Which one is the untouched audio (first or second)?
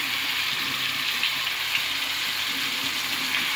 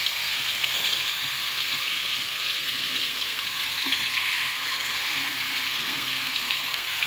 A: first